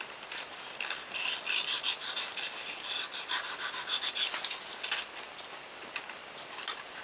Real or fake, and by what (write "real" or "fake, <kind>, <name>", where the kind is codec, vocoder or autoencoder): real